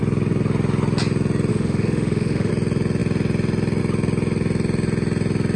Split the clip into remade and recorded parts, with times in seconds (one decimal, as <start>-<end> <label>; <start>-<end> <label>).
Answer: 0.0-1.5 recorded; 1.5-2.5 remade; 2.5-5.6 recorded